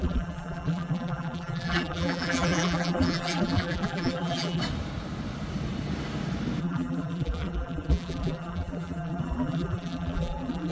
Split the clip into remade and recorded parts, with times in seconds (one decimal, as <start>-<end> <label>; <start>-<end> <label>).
0.0-4.6 remade; 4.6-6.6 recorded; 6.6-10.7 remade